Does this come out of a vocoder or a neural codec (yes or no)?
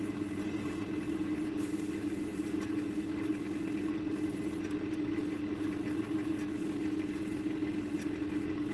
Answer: no